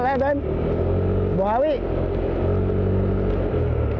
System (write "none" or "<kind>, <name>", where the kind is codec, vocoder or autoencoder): none